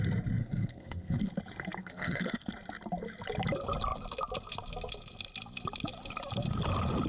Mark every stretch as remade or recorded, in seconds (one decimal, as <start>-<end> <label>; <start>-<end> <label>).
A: 0.0-0.4 recorded; 0.4-1.3 remade; 1.3-1.8 recorded; 1.8-2.5 remade; 2.5-7.1 recorded